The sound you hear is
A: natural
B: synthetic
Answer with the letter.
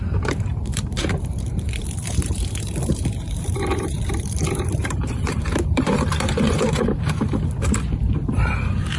B